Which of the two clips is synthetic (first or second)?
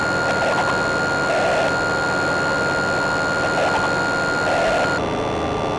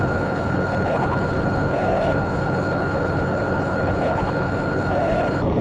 second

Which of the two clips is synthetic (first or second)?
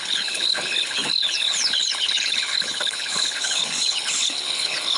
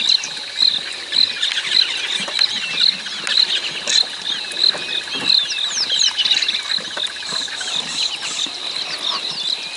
first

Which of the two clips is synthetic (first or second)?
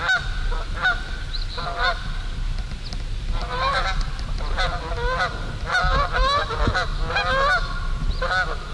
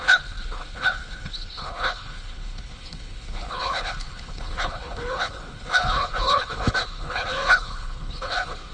second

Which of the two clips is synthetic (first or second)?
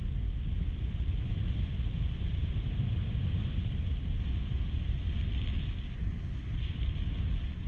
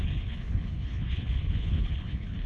second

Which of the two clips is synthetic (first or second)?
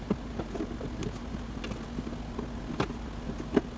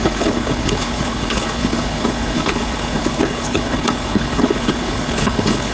second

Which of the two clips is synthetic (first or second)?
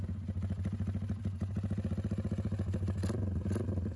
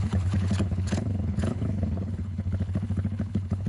second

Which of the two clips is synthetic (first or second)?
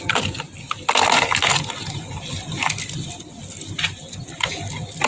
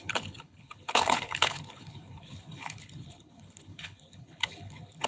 second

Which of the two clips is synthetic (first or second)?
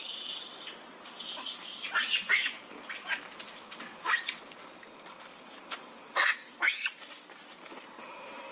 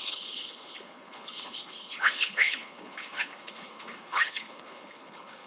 second